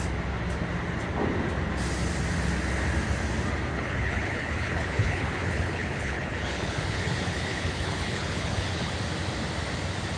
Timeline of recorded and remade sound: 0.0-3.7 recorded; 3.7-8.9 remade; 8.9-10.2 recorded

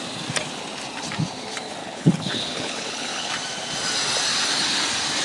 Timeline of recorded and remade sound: 0.0-1.8 recorded; 1.8-3.3 remade; 3.3-5.2 recorded

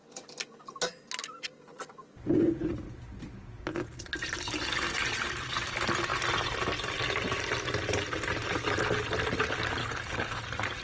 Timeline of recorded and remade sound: 0.0-9.8 recorded; 9.8-10.4 remade; 10.4-10.8 recorded

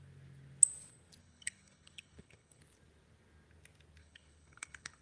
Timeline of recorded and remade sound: 0.0-1.2 recorded; 1.2-2.6 remade; 2.6-4.0 recorded; 4.0-5.0 remade

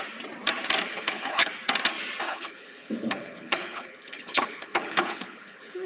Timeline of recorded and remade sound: 0.0-0.9 recorded; 0.9-1.5 remade; 1.5-2.3 recorded; 2.3-5.9 remade

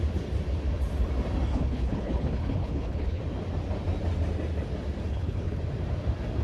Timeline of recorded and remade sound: 0.0-1.5 recorded; 1.5-3.2 remade; 3.2-5.1 recorded; 5.1-5.6 remade; 5.6-6.4 recorded